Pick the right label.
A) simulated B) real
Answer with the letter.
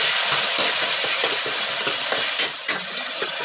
B